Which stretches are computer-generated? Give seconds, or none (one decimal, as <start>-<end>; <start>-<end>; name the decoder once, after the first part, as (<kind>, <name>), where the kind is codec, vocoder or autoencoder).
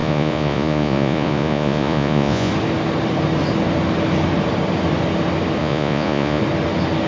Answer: 0.0-2.5 (vocoder, Vocos); 5.6-6.4